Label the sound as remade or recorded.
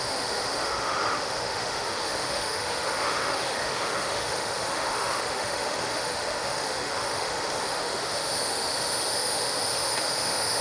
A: remade